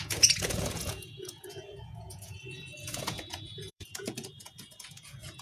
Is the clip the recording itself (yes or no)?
no